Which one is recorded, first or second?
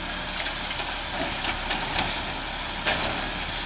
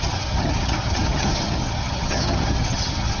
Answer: first